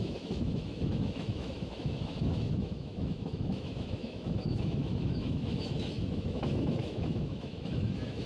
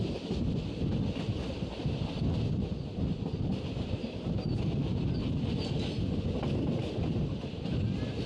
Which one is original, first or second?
second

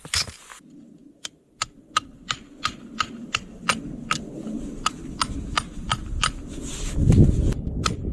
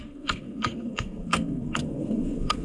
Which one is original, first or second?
first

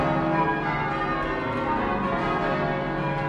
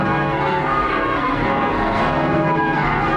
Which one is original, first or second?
first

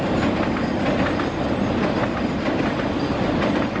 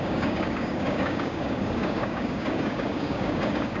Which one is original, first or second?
first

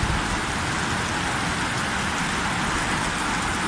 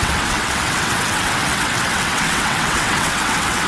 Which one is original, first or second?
first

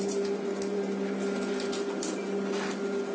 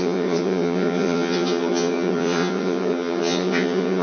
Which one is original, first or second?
first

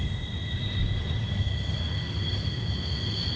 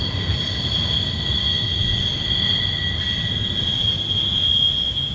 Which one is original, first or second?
second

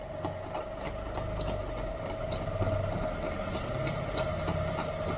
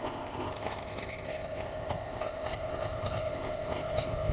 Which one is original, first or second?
first